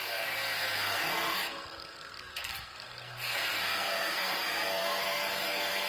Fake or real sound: fake